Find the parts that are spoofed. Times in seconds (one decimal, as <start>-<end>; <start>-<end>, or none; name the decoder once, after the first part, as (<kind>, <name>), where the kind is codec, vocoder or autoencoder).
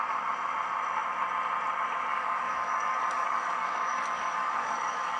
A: 2.1-5.2 (codec, DAC)